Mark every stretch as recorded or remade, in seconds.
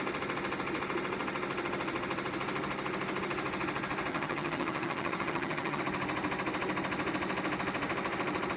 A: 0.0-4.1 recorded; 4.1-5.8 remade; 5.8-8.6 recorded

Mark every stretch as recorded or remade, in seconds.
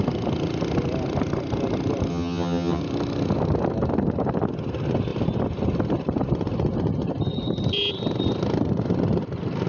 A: 0.0-2.1 recorded; 2.1-2.8 remade; 2.8-9.7 recorded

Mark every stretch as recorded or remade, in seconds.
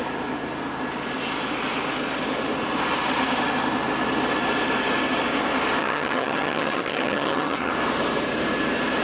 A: 0.0-5.8 recorded; 5.8-7.7 remade; 7.7-9.0 recorded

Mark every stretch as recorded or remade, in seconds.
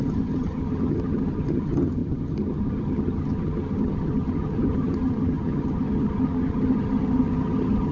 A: 0.0-7.9 remade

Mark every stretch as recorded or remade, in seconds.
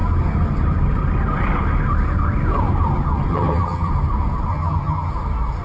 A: 0.0-3.3 recorded; 3.3-3.9 remade; 3.9-4.5 recorded; 4.5-5.1 remade; 5.1-5.6 recorded